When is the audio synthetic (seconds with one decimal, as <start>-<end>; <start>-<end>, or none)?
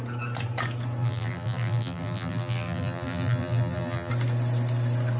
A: 1.0-4.1